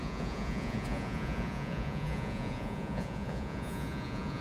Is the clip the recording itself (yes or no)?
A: no